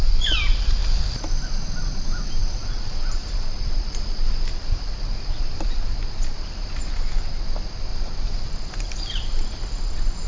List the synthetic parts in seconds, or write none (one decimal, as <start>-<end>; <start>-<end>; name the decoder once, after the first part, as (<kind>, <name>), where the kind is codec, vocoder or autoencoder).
0.8-1.4 (vocoder, BigVGAN v2); 2.4-6.9; 7.9-9.8